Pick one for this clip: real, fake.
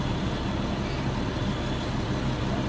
real